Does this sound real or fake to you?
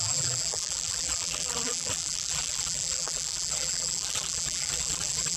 fake